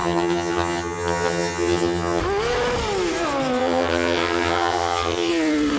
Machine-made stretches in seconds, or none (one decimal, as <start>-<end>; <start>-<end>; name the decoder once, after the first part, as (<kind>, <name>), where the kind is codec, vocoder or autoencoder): 0.0-2.2 (vocoder, HiFi-GAN); 3.6-5.3